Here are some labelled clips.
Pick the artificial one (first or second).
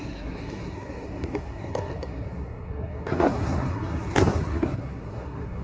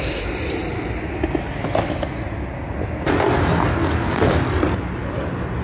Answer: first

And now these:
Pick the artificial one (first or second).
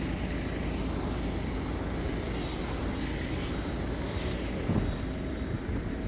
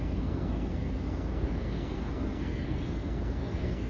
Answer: second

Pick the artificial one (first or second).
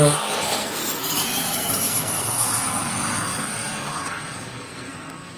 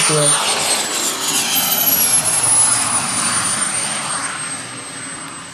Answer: first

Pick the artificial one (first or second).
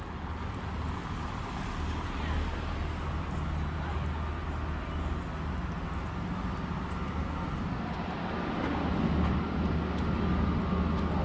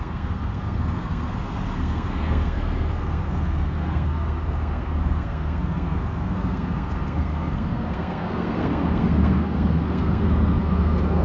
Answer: second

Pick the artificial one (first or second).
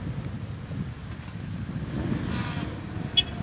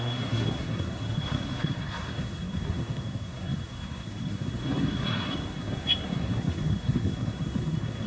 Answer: second